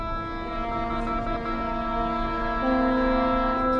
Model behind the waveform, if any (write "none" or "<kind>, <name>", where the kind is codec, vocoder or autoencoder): none